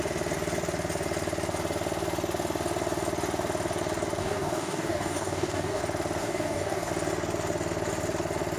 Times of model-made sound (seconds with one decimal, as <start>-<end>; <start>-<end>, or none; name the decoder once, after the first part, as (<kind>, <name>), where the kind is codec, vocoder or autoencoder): 4.2-5.8 (codec, DAC); 6.2-6.9